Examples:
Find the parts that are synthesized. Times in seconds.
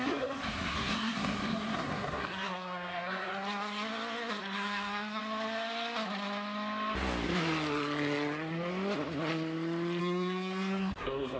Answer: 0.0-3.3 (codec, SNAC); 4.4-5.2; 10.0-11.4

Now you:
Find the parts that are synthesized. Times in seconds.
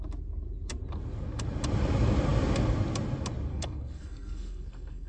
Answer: 3.5-5.1 (codec, SNAC)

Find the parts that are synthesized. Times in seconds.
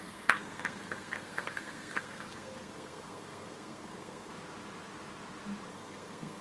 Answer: 0.0-4.3 (codec, SNAC); 5.7-6.4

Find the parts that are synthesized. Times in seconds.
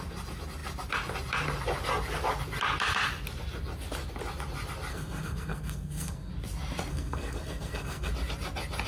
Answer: 4.9-6.3 (codec, SNAC); 6.9-8.1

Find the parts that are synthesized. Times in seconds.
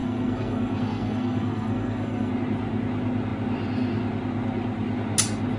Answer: 0.0-2.3 (codec, SNAC)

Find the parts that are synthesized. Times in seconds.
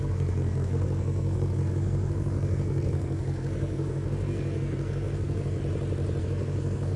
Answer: 0.0-5.6 (codec, SNAC); 6.2-7.0